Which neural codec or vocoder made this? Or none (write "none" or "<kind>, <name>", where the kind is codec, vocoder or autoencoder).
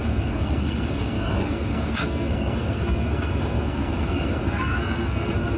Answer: codec, SNAC